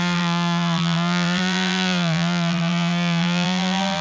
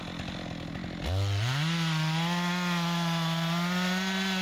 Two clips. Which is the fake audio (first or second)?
first